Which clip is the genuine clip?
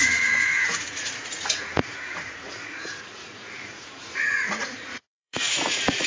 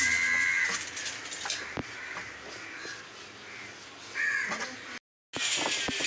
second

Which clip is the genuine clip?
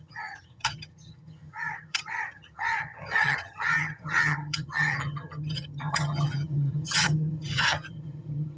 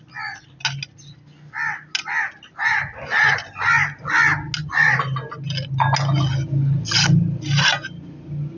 second